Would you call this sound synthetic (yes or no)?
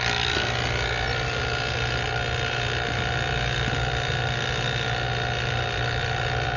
no